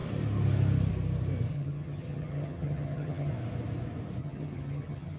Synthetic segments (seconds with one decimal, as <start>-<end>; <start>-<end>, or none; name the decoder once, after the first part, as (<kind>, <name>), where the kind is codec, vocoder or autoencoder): 1.5-3.3 (vocoder, HiFi-GAN); 4.2-5.2